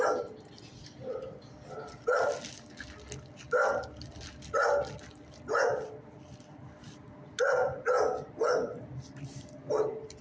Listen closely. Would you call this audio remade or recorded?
recorded